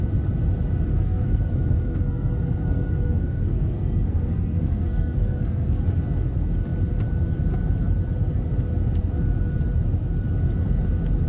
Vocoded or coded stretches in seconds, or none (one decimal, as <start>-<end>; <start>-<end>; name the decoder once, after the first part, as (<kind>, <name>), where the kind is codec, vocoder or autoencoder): 0.9-5.8 (codec, SNAC)